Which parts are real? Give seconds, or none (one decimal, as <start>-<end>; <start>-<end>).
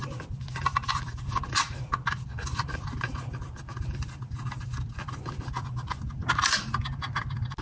0.0-7.6